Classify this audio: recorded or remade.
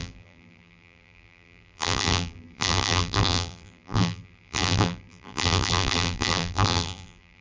remade